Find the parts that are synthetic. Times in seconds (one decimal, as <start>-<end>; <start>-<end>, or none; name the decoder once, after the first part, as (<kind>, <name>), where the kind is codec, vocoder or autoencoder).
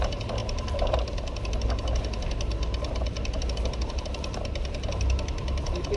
none